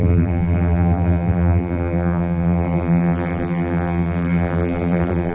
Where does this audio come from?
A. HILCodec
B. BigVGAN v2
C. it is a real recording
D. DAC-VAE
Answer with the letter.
B